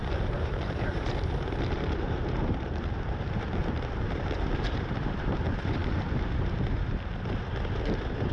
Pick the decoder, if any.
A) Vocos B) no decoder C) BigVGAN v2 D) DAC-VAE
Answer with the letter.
C